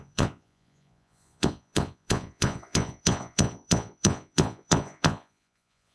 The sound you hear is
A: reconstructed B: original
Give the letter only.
A